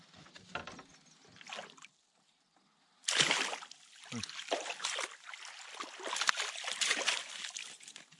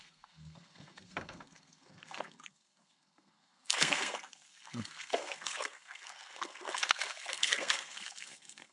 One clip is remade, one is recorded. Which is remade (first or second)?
second